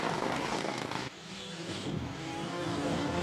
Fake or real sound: fake